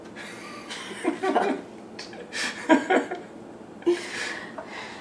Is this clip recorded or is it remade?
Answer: recorded